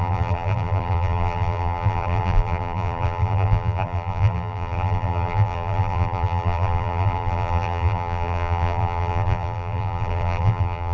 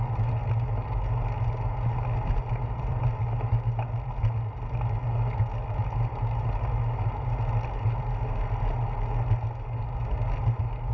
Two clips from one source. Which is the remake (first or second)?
first